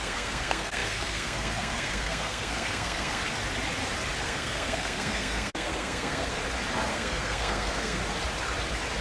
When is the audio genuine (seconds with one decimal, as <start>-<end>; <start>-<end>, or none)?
3.2-4.2; 6.4-6.9; 8.0-9.0